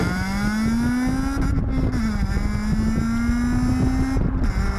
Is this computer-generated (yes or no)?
no